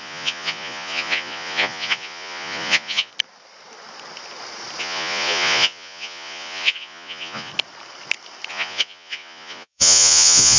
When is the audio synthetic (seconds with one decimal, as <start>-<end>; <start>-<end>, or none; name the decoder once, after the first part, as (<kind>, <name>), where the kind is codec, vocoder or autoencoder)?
0.0-3.1 (vocoder, Vocos); 4.8-7.5; 8.5-10.6